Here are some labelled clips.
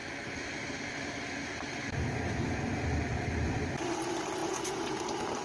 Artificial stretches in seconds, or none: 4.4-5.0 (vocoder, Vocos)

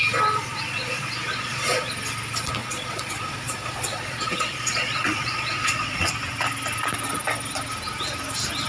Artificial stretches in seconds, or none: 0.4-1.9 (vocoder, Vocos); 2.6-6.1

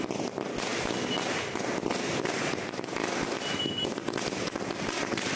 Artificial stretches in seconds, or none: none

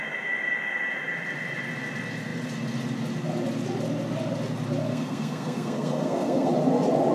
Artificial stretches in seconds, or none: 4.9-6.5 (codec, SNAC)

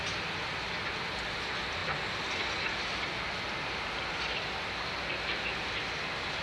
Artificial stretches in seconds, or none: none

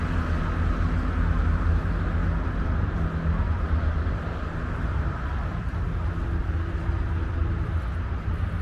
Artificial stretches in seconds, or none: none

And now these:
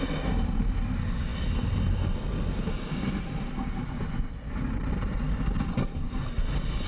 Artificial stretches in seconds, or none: none

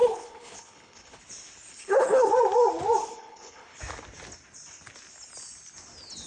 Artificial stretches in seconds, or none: 0.0-1.2 (codec, HILCodec); 1.7-2.3; 3.0-3.8